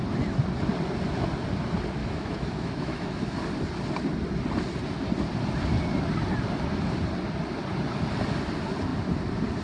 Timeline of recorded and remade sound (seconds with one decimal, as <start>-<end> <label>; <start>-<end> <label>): 0.0-2.0 recorded; 2.0-3.4 remade; 3.4-9.6 recorded